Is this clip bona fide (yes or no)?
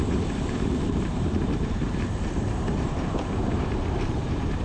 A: no